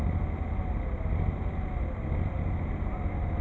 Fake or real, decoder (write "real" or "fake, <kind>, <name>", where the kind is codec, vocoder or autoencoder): real